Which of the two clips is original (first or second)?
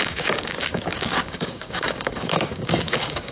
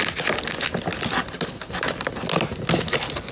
second